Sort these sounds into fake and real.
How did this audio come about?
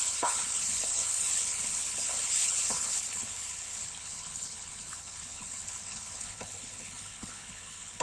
fake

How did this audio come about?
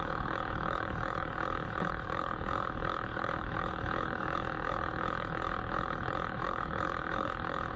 fake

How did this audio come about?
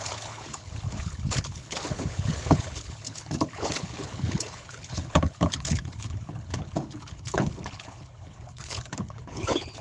fake